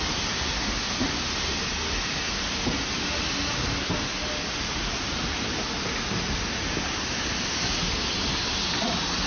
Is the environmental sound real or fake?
real